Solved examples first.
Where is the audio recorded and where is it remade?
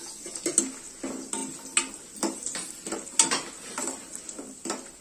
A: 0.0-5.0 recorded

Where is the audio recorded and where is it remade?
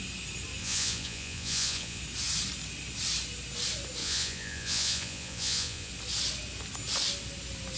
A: 0.0-0.6 recorded; 0.6-2.0 remade; 2.0-4.0 recorded; 4.0-5.9 remade; 5.9-7.8 recorded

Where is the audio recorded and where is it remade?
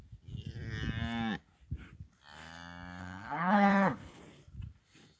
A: 0.0-3.0 recorded; 3.0-4.2 remade; 4.2-5.2 recorded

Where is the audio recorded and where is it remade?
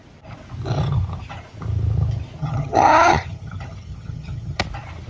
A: 0.0-2.4 recorded; 2.4-4.6 remade; 4.6-5.1 recorded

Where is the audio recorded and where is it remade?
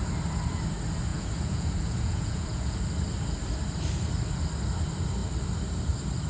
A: 0.0-1.1 recorded; 1.1-2.8 remade; 2.8-6.3 recorded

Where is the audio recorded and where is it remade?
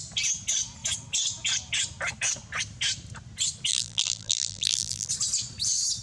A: 0.0-3.7 recorded; 3.7-5.1 remade; 5.1-6.0 recorded